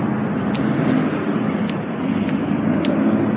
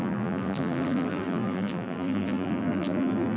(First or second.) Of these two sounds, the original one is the first